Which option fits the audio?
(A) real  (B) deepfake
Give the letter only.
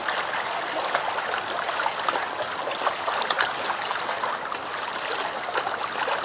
A